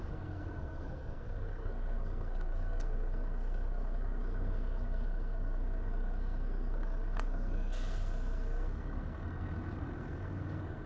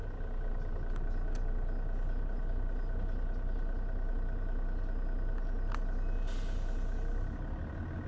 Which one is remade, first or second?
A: first